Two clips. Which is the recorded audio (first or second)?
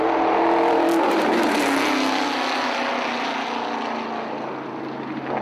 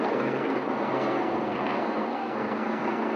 first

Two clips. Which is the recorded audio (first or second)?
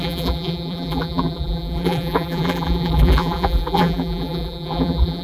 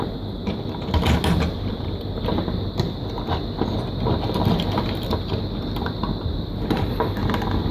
second